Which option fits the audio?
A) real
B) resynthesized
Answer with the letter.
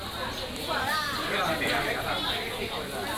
A